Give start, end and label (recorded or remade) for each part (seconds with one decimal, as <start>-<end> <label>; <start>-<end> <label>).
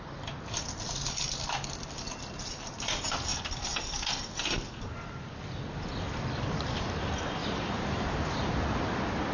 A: 0.0-7.4 recorded; 7.4-8.5 remade; 8.5-9.3 recorded